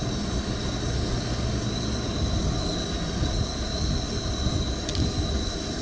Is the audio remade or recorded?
recorded